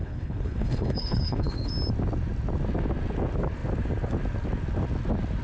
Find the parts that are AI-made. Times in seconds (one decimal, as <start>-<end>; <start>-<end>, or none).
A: 0.0-1.7